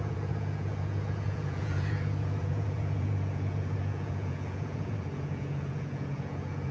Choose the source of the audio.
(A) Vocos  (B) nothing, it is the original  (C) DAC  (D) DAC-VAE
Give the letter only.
A